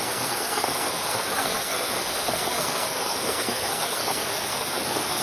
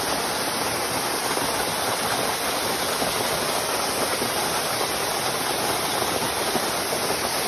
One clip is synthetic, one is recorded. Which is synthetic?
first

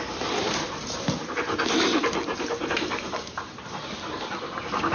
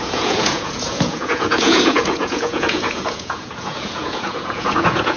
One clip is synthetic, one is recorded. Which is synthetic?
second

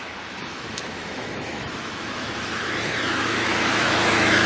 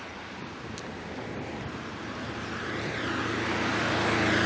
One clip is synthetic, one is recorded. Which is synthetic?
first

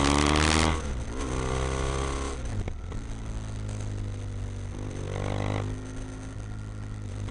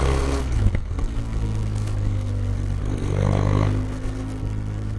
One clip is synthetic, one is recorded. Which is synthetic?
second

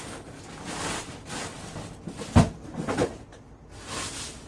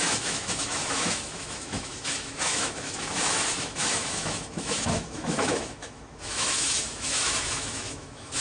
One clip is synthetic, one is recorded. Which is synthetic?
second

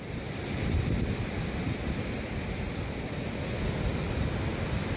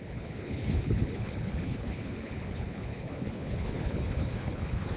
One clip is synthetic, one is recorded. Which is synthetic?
second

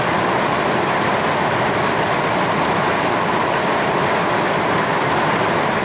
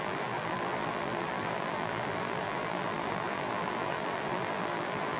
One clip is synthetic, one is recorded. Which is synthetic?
second